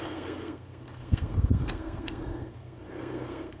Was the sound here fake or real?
fake